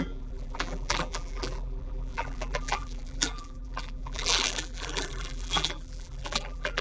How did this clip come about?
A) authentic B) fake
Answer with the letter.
B